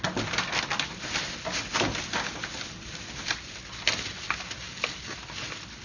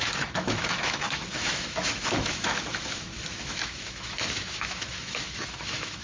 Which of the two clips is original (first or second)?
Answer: first